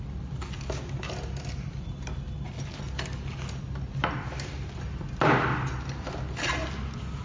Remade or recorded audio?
recorded